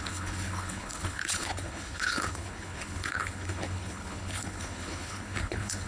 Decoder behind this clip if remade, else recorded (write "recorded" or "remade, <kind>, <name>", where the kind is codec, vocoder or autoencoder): remade, codec, HILCodec